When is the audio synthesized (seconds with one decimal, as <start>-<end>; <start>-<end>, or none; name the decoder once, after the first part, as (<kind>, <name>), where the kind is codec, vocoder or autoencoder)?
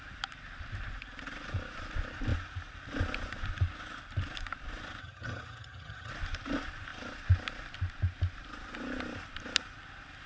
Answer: 5.0-6.1 (vocoder, HiFi-GAN)